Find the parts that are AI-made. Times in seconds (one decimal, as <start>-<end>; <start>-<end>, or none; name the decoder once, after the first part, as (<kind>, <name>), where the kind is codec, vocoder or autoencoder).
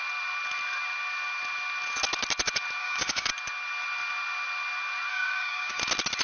2.8-3.3 (codec, DAC); 5.1-5.8